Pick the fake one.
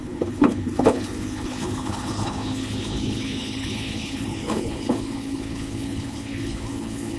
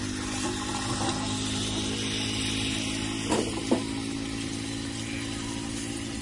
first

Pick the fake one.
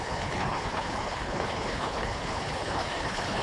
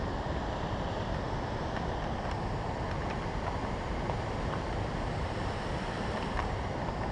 first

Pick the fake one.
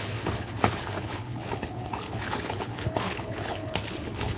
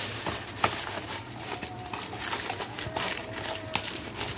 first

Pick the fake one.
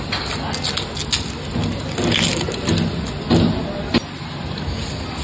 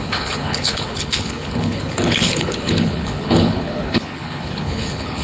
second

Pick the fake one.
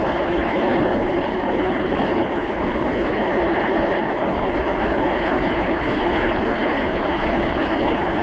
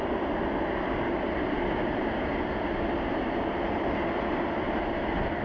first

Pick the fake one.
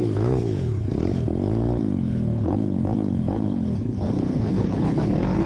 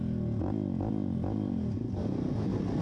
first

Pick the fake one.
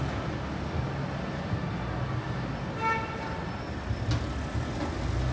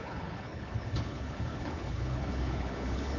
second